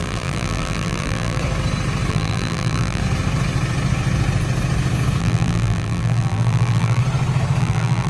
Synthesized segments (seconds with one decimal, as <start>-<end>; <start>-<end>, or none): 0.0-1.4; 2.1-3.0; 5.2-7.0; 7.6-8.1